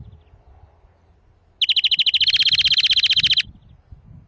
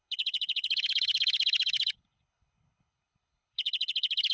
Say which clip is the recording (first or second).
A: first